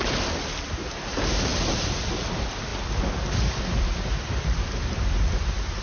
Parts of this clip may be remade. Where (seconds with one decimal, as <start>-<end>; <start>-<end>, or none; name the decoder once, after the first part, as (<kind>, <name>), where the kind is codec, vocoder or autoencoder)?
none